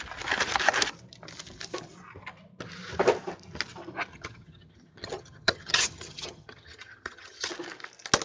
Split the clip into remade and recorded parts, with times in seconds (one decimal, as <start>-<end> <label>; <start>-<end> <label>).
0.0-4.1 recorded; 4.1-7.5 remade; 7.5-8.2 recorded

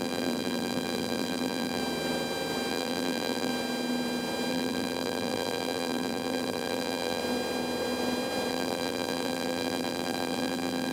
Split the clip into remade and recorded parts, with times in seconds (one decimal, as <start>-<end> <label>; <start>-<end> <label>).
0.0-1.8 remade; 1.8-2.7 recorded; 2.7-3.5 remade; 3.5-4.5 recorded; 4.5-7.2 remade; 7.2-8.5 recorded; 8.5-10.9 remade

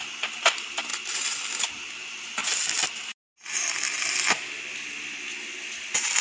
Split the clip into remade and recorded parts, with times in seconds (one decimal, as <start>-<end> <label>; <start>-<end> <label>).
0.0-0.9 recorded; 0.9-1.7 remade; 1.7-6.2 recorded

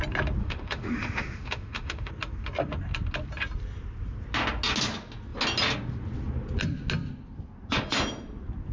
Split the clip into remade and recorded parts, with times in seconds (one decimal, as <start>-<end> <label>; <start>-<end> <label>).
0.0-0.4 recorded; 0.4-2.1 remade; 2.1-8.7 recorded

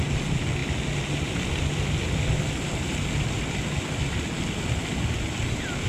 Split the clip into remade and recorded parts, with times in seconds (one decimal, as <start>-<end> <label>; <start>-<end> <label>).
0.0-5.9 recorded

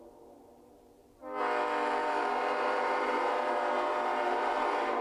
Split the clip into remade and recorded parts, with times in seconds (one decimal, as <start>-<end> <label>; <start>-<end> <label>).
0.0-2.0 recorded; 2.0-5.0 remade

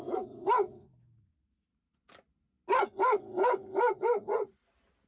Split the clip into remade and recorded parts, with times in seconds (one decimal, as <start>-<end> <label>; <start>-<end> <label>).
0.0-1.7 remade; 1.7-5.1 recorded